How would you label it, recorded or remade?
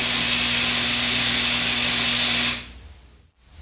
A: recorded